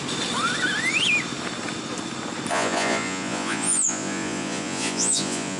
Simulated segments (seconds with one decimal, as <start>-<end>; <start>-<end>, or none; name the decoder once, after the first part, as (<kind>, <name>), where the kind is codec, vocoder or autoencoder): 2.5-5.6 (vocoder, Vocos)